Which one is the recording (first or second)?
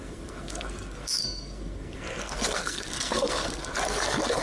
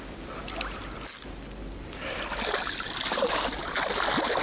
second